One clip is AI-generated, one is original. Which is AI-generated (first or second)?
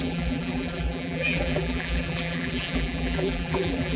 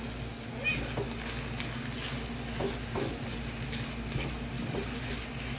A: first